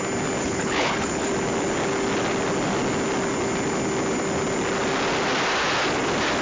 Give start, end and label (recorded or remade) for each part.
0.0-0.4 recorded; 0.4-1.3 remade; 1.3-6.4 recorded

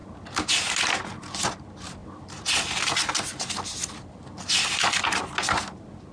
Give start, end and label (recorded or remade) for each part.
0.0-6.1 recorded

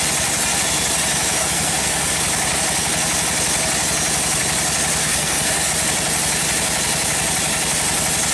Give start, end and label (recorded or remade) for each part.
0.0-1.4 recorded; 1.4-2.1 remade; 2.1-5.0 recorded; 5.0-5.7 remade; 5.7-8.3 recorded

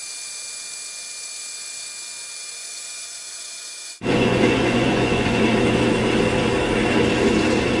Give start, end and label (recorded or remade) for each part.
0.0-2.6 recorded; 2.6-5.4 remade; 5.4-7.8 recorded

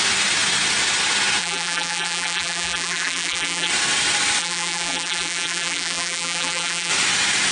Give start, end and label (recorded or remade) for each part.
0.0-1.4 recorded; 1.4-3.7 remade; 3.7-4.4 recorded; 4.4-6.9 remade; 6.9-7.5 recorded

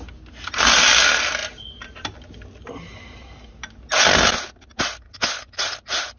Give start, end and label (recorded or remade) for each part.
0.0-6.2 recorded